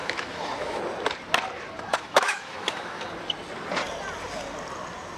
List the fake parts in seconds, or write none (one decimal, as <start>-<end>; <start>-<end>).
0.0-0.8; 1.9-3.0